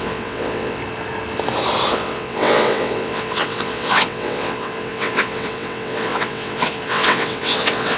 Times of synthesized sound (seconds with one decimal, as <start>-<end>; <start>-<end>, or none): 0.0-0.8; 1.9-8.0